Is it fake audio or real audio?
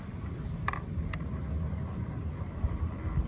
real